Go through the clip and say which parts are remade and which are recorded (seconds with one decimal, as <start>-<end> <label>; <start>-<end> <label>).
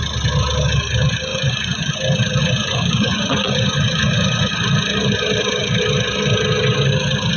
0.0-1.3 recorded; 1.3-1.9 remade; 1.9-2.4 recorded; 2.4-4.5 remade; 4.5-7.4 recorded